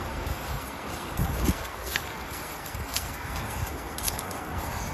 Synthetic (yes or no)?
yes